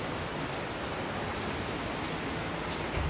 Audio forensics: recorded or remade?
recorded